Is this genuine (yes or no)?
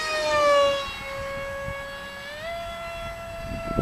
yes